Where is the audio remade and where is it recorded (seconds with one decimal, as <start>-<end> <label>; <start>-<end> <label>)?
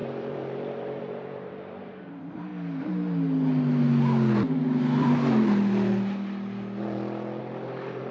0.0-2.5 remade; 2.5-7.4 recorded; 7.4-8.1 remade